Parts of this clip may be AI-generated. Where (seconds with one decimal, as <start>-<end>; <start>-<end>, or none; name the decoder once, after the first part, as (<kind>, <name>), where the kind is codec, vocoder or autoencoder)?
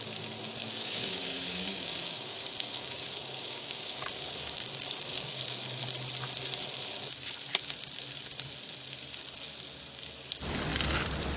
0.6-5.8 (codec, DAC)